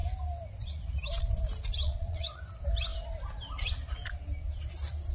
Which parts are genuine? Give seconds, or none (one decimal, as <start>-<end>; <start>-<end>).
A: 0.0-1.7; 2.4-5.1